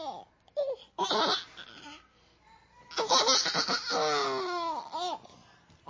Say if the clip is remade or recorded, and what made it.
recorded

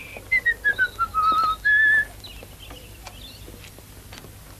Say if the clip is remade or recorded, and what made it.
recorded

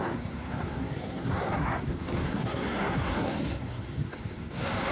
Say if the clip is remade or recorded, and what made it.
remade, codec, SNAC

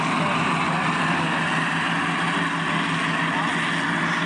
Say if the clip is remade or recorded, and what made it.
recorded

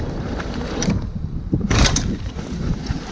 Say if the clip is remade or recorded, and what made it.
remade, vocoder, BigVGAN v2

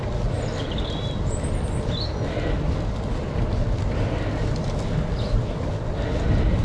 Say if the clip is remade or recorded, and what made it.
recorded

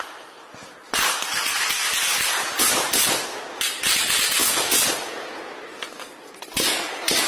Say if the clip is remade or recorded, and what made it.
recorded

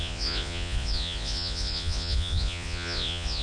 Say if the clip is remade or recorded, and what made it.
remade, vocoder, Vocos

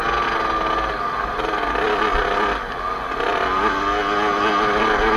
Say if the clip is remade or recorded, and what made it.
recorded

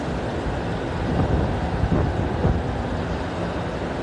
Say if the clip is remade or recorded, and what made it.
recorded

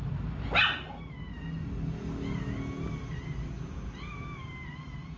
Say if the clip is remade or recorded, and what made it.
recorded